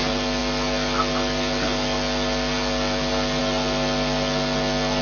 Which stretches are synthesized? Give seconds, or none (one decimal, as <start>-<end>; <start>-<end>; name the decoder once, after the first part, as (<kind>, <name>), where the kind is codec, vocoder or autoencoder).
none